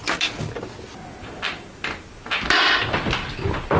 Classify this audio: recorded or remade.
recorded